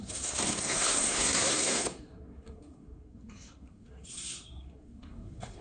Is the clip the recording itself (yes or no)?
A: no